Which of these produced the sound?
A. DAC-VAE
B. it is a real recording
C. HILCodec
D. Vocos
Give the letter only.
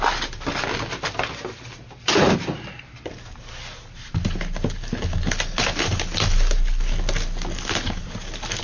B